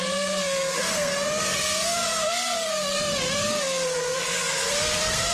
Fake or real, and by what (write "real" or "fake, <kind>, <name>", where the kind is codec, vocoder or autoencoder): fake, codec, SNAC